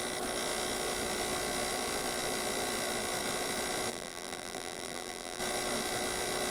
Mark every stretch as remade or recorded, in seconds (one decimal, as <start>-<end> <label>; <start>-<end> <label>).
0.0-3.9 recorded; 3.9-5.4 remade; 5.4-6.5 recorded